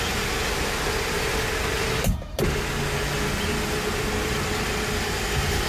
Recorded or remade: recorded